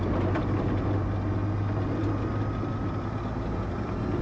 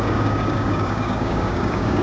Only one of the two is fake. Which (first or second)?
second